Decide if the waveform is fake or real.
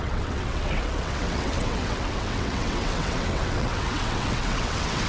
fake